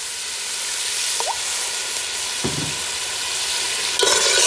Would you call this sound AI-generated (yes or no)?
no